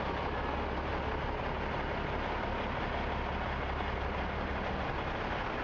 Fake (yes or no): no